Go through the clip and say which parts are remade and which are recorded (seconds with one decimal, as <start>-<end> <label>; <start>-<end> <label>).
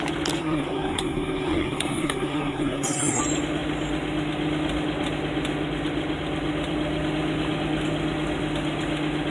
0.0-0.4 recorded; 0.4-3.2 remade; 3.2-9.3 recorded